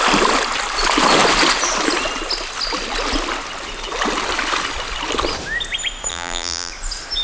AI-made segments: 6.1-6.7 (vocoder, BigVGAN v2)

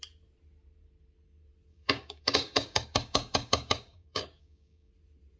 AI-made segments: 1.7-4.9 (codec, DAC)

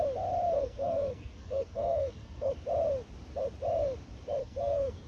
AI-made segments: 0.6-2.5 (codec, SNAC); 4.4-5.1

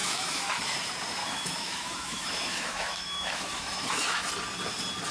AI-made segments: 0.0-0.6 (autoencoder, DAC-VAE); 1.2-4.3